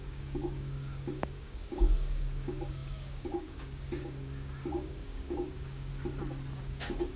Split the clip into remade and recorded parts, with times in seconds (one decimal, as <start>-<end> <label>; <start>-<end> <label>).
0.0-5.9 remade; 5.9-6.6 recorded; 6.6-7.2 remade